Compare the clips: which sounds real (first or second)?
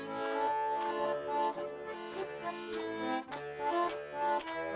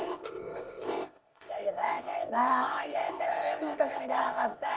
first